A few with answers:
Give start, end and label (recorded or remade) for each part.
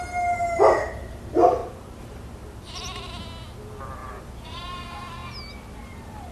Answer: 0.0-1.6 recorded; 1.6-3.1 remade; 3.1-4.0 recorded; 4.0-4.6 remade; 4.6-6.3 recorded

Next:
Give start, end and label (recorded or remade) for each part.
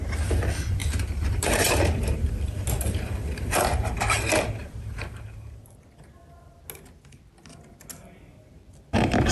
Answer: 0.0-0.8 recorded; 0.8-2.3 remade; 2.3-9.3 recorded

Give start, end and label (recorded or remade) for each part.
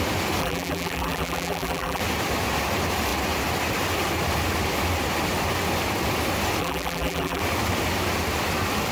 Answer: 0.0-0.4 recorded; 0.4-2.0 remade; 2.0-6.6 recorded; 6.6-7.4 remade; 7.4-8.9 recorded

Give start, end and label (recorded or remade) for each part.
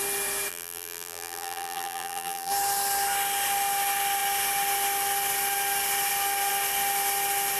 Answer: 0.0-0.5 recorded; 0.5-2.5 remade; 2.5-7.6 recorded